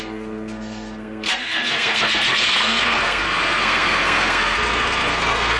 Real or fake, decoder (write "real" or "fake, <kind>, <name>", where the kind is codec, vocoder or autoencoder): fake, codec, SNAC